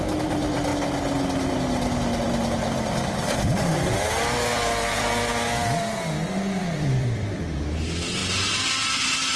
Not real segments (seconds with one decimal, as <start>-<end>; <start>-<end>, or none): 0.0-0.7; 1.5-5.6; 6.6-8.2